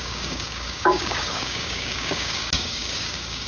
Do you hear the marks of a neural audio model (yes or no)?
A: yes